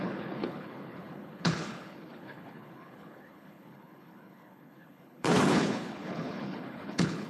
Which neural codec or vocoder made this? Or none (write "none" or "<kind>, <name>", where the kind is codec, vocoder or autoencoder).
codec, HILCodec